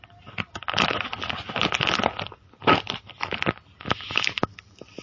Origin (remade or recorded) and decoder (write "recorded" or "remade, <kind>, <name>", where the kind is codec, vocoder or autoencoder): remade, vocoder, BigVGAN v2